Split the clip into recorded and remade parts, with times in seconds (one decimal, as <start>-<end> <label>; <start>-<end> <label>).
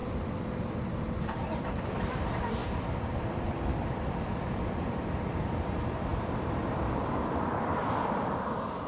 0.0-8.9 remade